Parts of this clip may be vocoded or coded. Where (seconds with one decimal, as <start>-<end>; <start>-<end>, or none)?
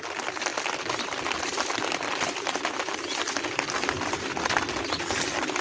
none